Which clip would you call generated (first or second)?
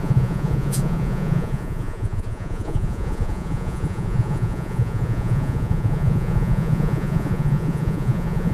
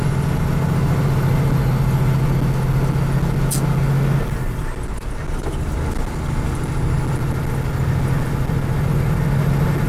first